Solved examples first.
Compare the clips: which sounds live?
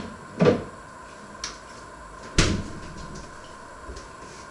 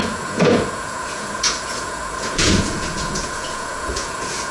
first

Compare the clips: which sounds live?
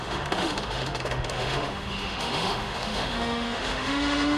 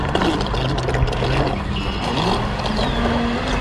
second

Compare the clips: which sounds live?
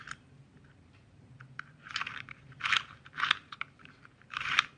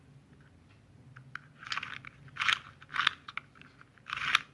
second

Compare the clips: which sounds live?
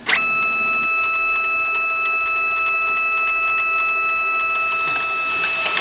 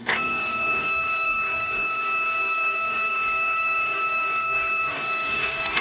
first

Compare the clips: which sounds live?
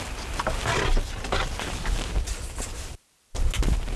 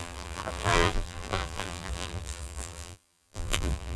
first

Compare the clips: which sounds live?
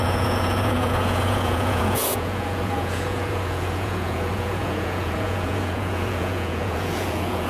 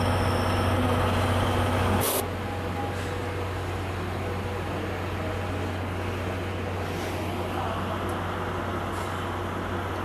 second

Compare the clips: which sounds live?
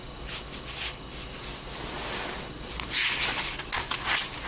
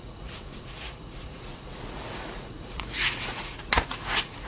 first